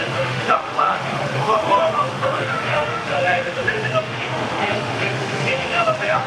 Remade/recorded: remade